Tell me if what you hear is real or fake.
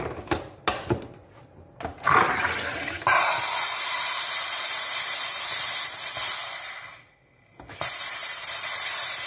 real